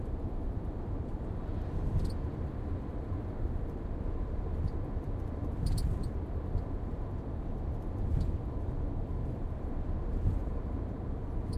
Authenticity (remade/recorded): remade